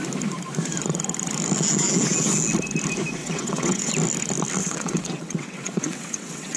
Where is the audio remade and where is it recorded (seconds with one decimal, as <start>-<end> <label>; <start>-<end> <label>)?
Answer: 0.0-3.2 recorded; 3.2-3.9 remade; 3.9-4.6 recorded; 4.6-6.6 remade